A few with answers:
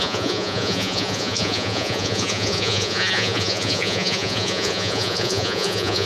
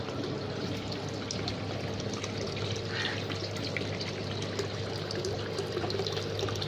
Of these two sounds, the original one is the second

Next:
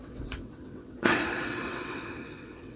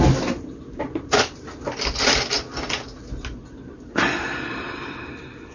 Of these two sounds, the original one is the second